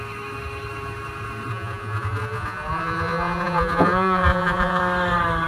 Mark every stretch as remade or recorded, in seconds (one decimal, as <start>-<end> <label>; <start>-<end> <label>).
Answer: 0.0-1.5 recorded; 1.5-4.8 remade; 4.8-5.5 recorded